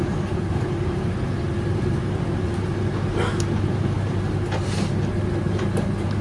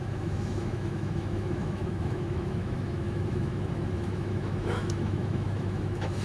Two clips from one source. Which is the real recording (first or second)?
first